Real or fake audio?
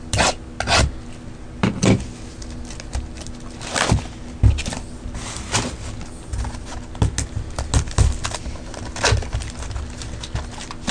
real